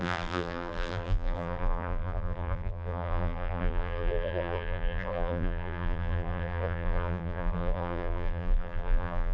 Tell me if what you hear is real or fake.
fake